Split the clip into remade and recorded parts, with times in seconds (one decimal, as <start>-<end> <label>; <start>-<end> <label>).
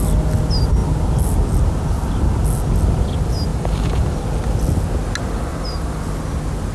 0.0-3.5 recorded; 3.5-4.2 remade; 4.2-5.5 recorded; 5.5-6.0 remade; 6.0-6.7 recorded